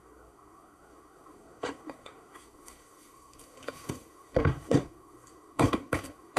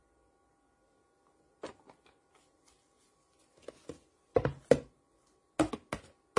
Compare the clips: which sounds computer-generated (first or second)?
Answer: first